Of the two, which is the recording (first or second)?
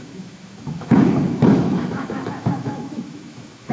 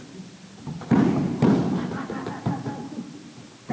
second